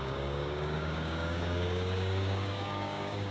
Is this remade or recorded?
remade